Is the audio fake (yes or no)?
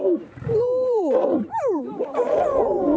yes